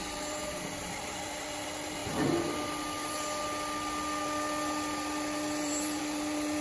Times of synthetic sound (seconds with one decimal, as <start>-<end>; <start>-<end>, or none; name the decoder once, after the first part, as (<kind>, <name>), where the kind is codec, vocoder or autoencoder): 0.4-1.0 (vocoder, Vocos)